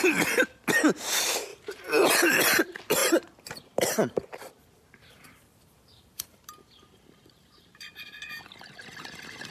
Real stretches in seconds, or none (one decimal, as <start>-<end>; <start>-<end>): 0.0-1.5; 2.6-3.0; 8.2-9.5